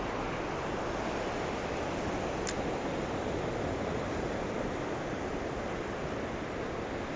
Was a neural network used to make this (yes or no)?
no